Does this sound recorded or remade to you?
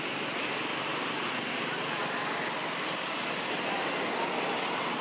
recorded